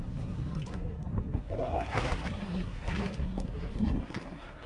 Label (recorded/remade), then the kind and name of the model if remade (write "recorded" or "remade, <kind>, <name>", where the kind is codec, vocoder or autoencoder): remade, codec, SNAC